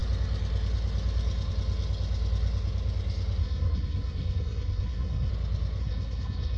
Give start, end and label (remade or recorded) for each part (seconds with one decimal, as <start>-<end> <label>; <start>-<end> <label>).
0.0-3.4 recorded; 3.4-5.3 remade; 5.3-5.8 recorded; 5.8-6.6 remade